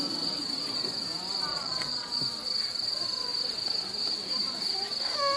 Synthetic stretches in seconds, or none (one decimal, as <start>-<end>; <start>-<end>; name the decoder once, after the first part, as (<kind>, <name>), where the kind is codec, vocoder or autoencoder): 1.5-2.2 (vocoder, Vocos)